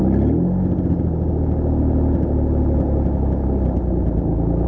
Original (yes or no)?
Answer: yes